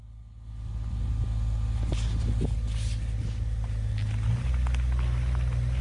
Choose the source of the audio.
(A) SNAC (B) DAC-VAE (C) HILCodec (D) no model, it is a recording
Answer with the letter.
D